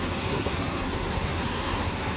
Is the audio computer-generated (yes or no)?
yes